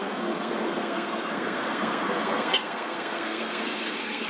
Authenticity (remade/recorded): remade